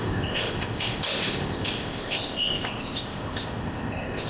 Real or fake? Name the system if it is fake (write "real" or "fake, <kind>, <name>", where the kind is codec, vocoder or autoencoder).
fake, codec, ZipCodec